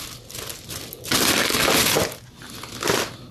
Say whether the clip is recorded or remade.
recorded